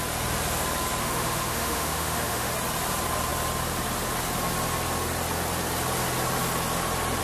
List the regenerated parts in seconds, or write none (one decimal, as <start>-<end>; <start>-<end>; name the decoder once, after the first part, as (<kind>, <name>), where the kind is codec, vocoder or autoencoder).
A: 1.0-2.5 (autoencoder, DAC-VAE)

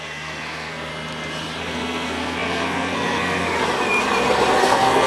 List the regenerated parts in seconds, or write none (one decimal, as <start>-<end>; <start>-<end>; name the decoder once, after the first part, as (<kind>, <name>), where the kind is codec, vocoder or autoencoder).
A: 0.0-0.9 (codec, SNAC); 1.6-3.6; 4.6-5.1